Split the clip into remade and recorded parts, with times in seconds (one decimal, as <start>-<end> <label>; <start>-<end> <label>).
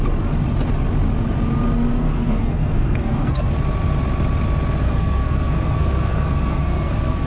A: 0.0-2.0 recorded; 2.0-3.5 remade; 3.5-4.8 recorded; 4.8-7.3 remade